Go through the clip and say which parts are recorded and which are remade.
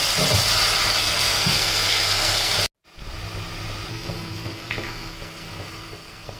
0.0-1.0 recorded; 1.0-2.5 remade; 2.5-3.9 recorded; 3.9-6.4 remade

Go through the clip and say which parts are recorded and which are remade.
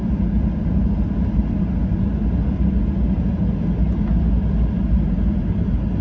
0.0-6.0 recorded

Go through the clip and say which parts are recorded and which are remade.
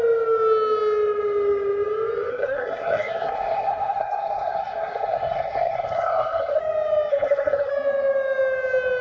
0.0-2.3 recorded; 2.3-6.6 remade; 6.6-7.1 recorded; 7.1-7.7 remade; 7.7-9.0 recorded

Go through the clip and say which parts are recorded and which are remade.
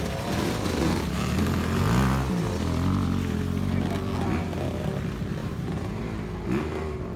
0.0-5.4 recorded; 5.4-6.0 remade; 6.0-7.2 recorded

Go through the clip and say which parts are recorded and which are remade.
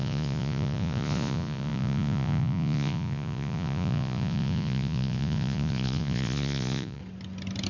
0.0-7.0 remade; 7.0-7.7 recorded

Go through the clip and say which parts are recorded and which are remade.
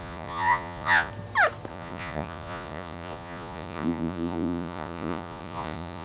0.0-1.1 remade; 1.1-1.7 recorded; 1.7-6.0 remade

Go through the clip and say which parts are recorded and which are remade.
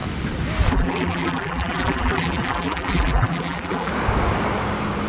0.0-0.7 recorded; 0.7-3.9 remade; 3.9-5.1 recorded